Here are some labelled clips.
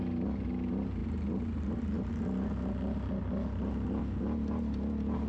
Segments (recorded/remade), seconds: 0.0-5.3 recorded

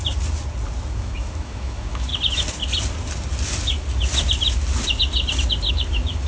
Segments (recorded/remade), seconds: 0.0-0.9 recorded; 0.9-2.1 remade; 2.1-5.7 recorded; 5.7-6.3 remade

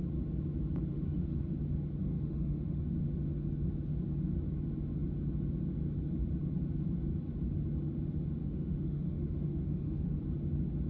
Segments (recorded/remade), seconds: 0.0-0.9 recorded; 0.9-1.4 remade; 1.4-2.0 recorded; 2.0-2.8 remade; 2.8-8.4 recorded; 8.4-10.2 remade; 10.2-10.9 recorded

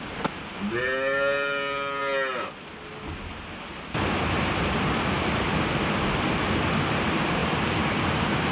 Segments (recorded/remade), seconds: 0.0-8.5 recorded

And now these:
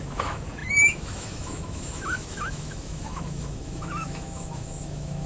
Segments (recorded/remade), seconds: 0.0-5.3 remade